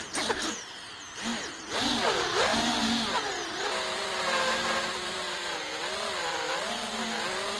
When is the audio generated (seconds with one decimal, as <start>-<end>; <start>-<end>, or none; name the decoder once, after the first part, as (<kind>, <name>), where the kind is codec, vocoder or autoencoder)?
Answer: 2.5-5.8 (vocoder, BigVGAN v2)